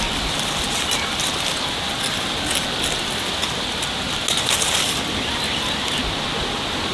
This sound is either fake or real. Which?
real